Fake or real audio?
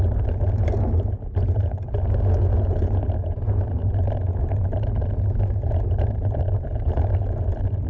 real